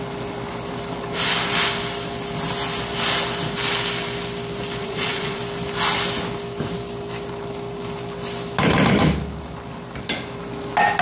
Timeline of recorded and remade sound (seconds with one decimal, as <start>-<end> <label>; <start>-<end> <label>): 0.0-4.8 recorded; 4.8-5.4 remade; 5.4-11.0 recorded